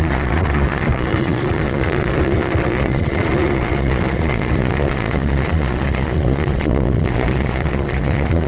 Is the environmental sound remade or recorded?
remade